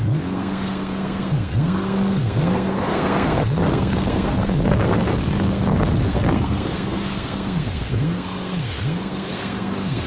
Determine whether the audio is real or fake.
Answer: fake